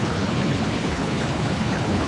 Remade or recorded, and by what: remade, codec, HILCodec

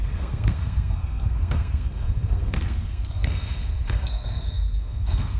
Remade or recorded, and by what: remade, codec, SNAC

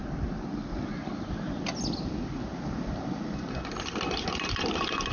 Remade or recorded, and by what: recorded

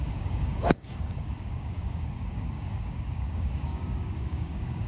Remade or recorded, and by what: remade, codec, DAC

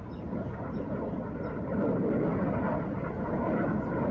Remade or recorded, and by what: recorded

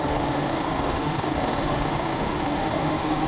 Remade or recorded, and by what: remade, autoencoder, DAC-VAE